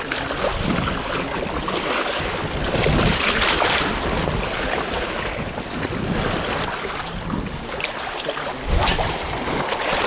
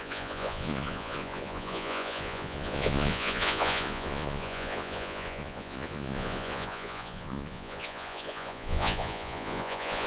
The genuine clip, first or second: first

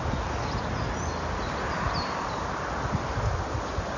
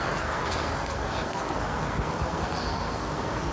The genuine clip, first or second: first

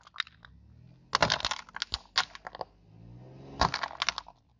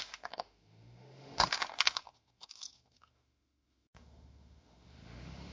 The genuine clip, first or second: first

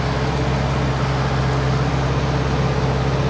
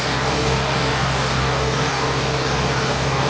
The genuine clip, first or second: first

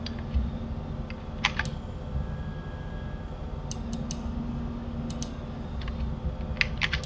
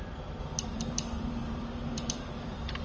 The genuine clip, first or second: first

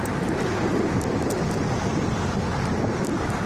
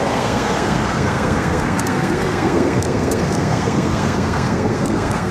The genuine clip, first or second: first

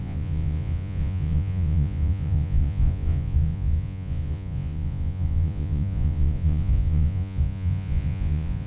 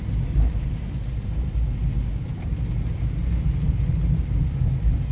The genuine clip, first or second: second